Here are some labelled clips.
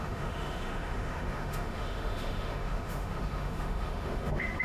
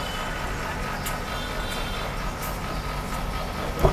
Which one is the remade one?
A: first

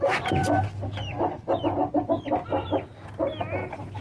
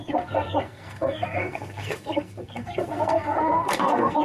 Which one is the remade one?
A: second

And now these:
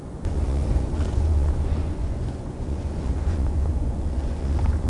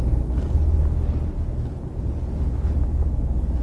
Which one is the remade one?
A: first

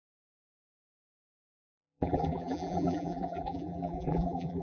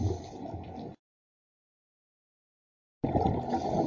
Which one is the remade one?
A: first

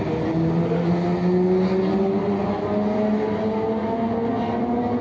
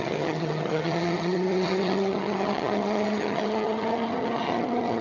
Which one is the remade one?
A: second